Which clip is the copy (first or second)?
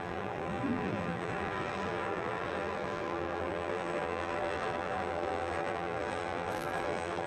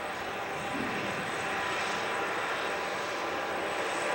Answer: first